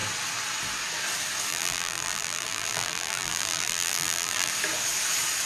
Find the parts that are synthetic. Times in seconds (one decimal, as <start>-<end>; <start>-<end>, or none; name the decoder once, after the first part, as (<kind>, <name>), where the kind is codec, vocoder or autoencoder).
1.5-4.5 (vocoder, BigVGAN v2)